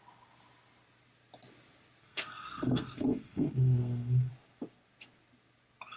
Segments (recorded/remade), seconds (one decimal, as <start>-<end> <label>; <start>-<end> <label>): 0.0-2.0 recorded; 2.0-4.3 remade; 4.3-6.0 recorded